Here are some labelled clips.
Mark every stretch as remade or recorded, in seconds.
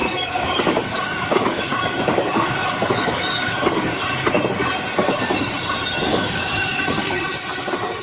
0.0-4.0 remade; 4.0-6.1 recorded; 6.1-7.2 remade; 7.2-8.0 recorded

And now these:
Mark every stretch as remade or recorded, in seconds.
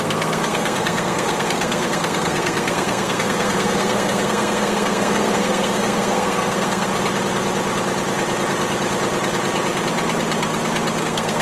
0.0-6.9 remade; 6.9-11.0 recorded; 11.0-11.4 remade